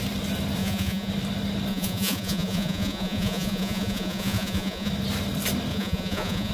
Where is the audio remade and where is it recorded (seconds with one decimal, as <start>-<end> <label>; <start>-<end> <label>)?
0.0-0.6 recorded; 0.6-1.1 remade; 1.1-1.7 recorded; 1.7-4.9 remade; 4.9-5.7 recorded; 5.7-6.5 remade

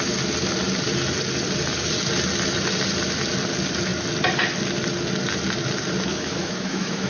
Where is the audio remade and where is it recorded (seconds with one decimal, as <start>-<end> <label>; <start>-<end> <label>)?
0.0-6.1 recorded; 6.1-7.1 remade